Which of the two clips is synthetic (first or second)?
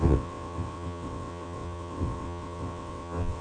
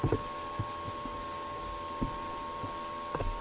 first